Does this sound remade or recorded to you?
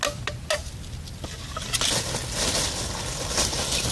recorded